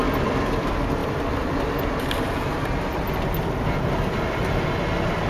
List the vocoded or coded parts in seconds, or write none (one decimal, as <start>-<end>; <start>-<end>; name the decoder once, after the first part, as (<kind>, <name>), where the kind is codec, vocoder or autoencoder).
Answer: 1.0-1.8 (vocoder, BigVGAN v2); 2.9-4.8